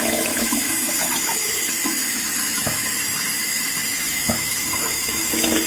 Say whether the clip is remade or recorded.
remade